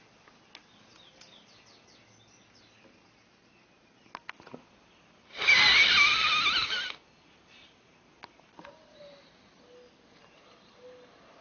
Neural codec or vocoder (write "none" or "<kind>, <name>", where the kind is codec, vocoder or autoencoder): none